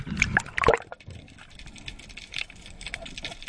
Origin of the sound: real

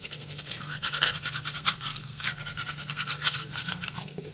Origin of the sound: fake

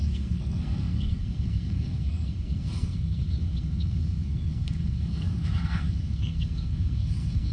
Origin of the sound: fake